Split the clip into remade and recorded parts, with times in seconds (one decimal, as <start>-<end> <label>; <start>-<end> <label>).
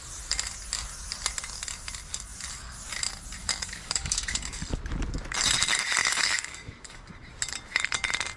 0.0-3.4 recorded; 3.4-4.6 remade; 4.6-6.0 recorded; 6.0-7.1 remade; 7.1-8.4 recorded